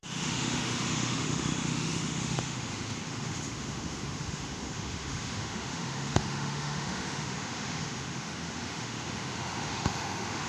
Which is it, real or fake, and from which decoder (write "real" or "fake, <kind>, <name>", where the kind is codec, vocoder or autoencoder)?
fake, autoencoder, DAC-VAE